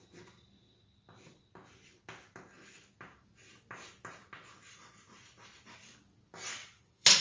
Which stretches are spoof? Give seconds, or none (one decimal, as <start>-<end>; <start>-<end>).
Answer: 6.6-7.2

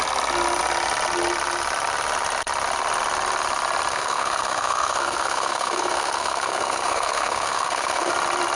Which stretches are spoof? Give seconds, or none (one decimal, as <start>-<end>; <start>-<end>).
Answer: 3.9-8.1

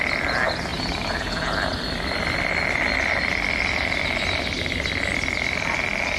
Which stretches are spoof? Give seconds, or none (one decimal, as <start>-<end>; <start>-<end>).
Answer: none

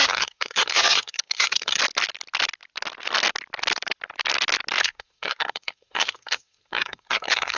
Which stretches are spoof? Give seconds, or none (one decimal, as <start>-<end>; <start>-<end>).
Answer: 0.0-1.8; 4.8-7.6

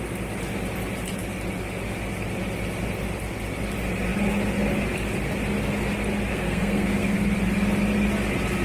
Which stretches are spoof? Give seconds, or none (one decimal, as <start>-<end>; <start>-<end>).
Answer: 6.3-7.2

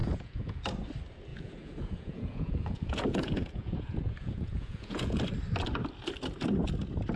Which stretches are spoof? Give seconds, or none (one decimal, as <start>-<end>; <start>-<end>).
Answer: 0.0-0.6; 1.3-5.2